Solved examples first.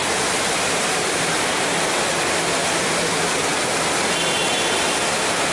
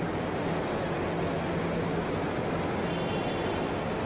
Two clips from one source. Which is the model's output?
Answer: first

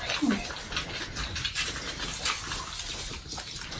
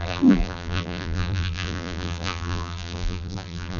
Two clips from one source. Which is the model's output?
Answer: second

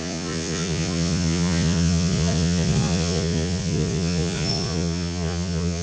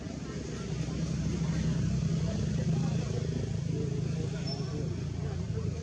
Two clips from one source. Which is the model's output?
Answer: first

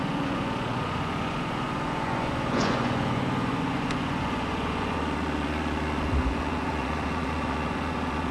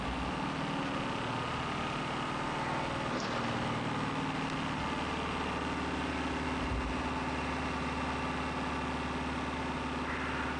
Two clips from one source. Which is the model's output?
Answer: first